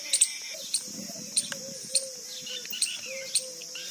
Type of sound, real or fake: real